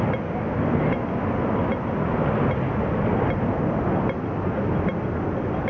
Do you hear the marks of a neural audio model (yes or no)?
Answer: no